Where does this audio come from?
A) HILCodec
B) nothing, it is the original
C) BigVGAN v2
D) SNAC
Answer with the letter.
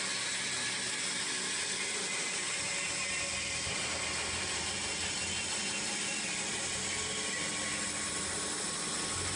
B